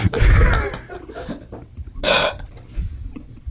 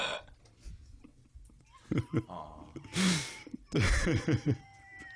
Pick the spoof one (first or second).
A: first